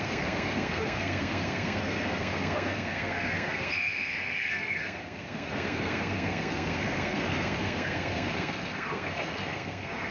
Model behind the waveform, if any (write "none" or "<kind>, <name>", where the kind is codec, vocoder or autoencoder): codec, SNAC